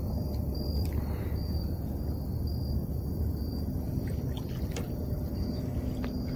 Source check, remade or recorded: recorded